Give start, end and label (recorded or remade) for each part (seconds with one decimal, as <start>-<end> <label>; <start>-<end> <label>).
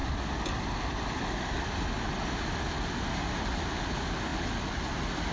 0.0-5.3 recorded